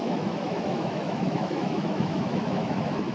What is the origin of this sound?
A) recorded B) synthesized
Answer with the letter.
B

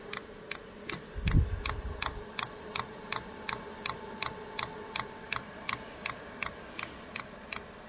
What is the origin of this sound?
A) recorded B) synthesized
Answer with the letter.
A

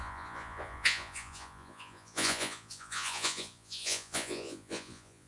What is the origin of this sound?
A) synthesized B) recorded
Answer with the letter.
A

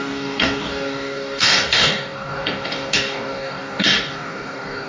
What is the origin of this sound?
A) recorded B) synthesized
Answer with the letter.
B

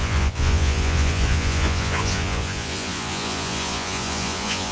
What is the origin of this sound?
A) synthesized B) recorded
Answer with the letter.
A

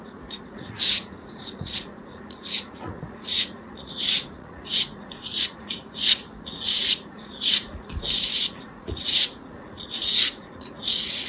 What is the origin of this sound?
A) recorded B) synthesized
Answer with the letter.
B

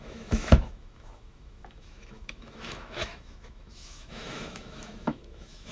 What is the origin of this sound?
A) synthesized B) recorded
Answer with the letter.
A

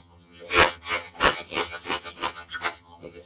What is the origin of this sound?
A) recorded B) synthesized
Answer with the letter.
B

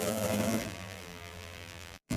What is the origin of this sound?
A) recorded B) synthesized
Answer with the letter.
B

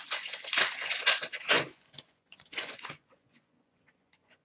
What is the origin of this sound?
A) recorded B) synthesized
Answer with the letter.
B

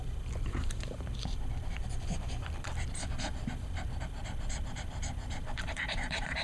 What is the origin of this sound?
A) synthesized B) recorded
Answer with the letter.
A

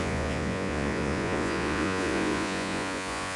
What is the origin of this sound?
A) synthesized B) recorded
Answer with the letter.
A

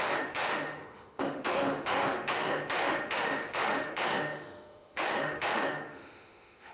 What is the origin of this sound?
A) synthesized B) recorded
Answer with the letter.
A